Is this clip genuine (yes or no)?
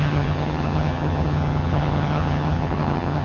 no